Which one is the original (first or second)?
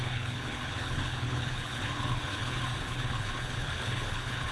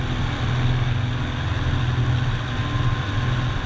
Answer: second